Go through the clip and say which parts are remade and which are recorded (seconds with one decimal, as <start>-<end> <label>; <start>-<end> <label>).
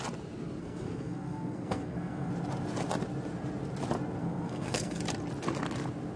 0.0-0.6 recorded; 0.6-2.3 remade; 2.3-4.2 recorded; 4.2-5.0 remade; 5.0-6.2 recorded